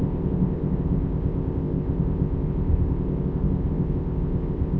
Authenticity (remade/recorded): remade